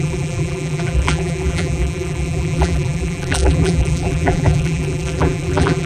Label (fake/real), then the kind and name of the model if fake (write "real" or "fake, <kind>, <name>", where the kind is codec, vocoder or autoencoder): fake, vocoder, BigVGAN v2